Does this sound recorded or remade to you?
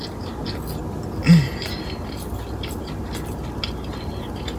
recorded